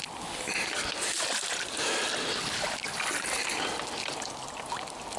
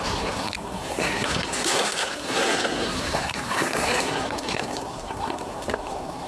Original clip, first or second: first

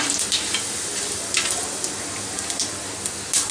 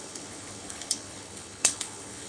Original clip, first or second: first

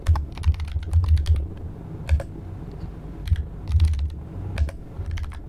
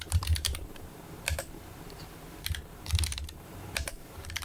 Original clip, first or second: first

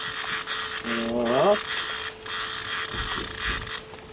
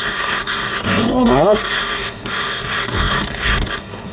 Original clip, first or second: first